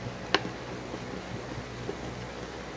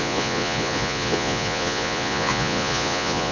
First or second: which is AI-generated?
second